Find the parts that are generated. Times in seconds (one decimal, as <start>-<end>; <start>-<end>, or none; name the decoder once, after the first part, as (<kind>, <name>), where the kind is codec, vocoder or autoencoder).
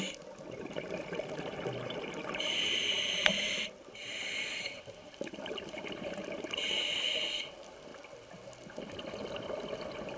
0.0-7.9 (vocoder, BigVGAN v2); 9.3-10.2